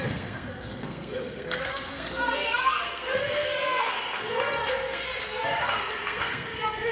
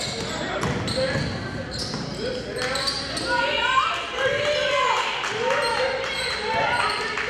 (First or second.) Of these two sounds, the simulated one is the first